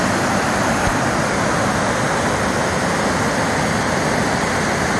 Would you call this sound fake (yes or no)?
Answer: no